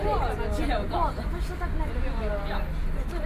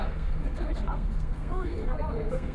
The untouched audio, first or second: first